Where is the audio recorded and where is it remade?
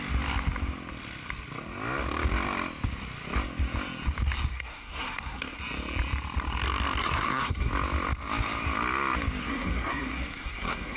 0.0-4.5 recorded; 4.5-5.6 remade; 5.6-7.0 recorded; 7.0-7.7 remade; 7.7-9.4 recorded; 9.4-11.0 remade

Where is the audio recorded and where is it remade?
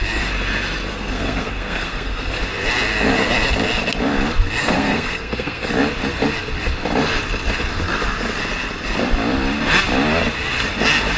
0.0-0.9 recorded; 0.9-2.4 remade; 2.4-4.6 recorded; 4.6-5.7 remade; 5.7-11.2 recorded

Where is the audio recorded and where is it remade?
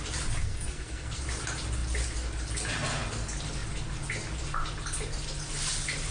0.0-0.4 recorded; 0.4-1.2 remade; 1.2-6.1 recorded